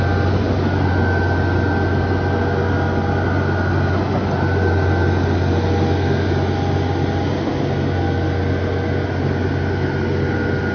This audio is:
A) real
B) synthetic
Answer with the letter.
A